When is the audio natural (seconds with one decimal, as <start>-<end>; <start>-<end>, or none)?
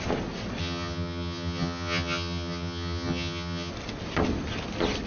0.0-0.6; 3.7-5.1